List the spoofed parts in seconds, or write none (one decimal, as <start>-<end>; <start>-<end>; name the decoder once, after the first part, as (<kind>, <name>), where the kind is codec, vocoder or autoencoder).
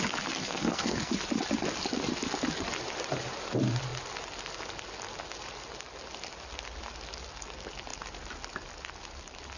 0.4-1.1 (codec, SNAC)